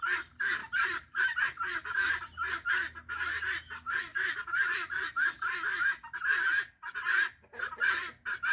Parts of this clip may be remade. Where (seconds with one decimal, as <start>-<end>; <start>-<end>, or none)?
0.6-2.7; 4.1-5.3